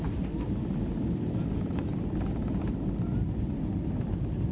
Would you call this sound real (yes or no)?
yes